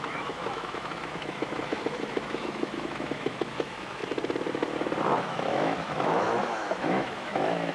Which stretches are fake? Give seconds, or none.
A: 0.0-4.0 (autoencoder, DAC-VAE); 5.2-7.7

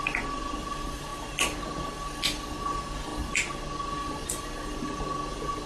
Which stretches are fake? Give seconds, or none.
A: 0.0-1.1 (vocoder, BigVGAN v2); 2.6-3.1

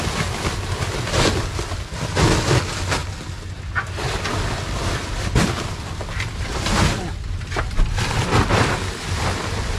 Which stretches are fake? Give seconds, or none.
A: none